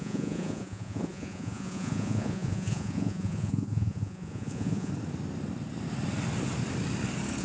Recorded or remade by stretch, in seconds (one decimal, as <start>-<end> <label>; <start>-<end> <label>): 0.0-4.9 remade; 4.9-7.4 recorded